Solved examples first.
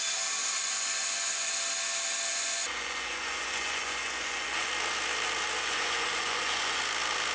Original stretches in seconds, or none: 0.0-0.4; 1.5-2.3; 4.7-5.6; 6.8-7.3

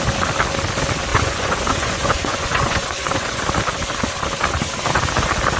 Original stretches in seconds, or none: 0.0-1.1; 3.4-5.6

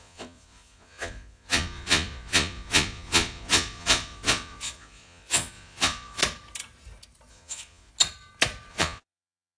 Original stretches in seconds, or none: 6.2-7.3; 7.9-8.7

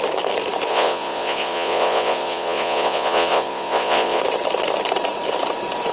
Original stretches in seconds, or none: 0.0-0.7; 4.2-5.9

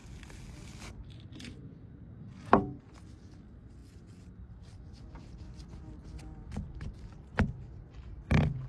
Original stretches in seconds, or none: 0.0-8.7

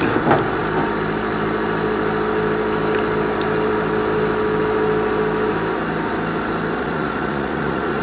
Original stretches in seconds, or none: 0.0-6.8

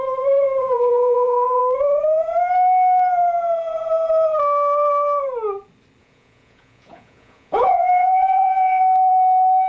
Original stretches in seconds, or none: 0.0-0.6; 1.6-6.0; 9.1-9.7

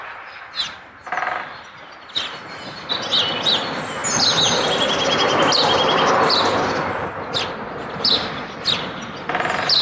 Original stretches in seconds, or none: 0.0-9.8